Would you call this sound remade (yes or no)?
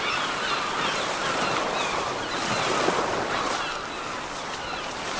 no